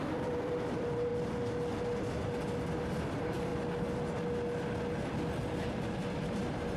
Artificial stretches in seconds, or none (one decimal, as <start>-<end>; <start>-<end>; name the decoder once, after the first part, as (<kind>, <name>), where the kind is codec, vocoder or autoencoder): 0.0-1.1 (vocoder, BigVGAN v2); 3.1-3.5